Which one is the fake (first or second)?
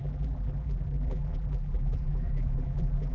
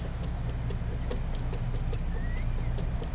first